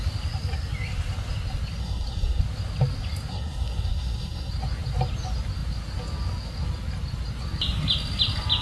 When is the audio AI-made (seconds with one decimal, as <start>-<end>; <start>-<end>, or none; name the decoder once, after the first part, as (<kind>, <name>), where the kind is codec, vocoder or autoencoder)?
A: 1.8-2.4 (codec, SNAC); 3.3-4.5